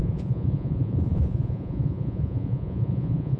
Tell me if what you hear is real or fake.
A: fake